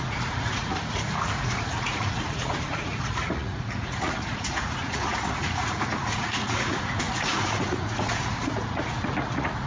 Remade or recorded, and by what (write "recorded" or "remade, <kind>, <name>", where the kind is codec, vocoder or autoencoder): remade, vocoder, Vocos